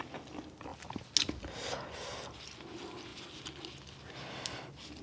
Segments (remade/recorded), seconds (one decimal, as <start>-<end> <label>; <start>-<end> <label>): 0.0-5.0 recorded